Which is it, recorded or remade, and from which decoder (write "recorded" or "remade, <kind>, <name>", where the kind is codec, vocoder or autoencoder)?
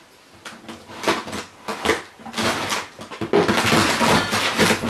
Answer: recorded